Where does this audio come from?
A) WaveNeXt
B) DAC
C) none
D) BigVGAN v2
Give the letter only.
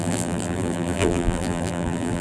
D